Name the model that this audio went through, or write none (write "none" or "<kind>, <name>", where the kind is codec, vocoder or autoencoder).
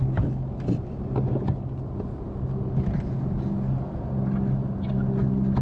none